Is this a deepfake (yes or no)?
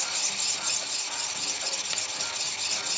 no